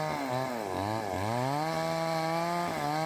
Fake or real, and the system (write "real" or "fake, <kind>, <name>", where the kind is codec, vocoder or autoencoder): real